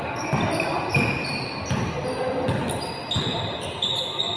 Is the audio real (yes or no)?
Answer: yes